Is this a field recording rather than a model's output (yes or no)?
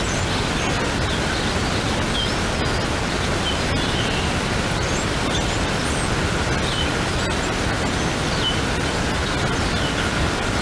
yes